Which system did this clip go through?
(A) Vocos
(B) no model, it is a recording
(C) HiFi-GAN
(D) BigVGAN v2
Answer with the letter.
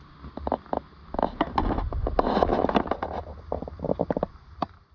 B